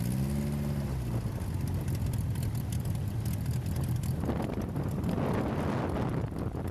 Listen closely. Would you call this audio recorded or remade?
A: recorded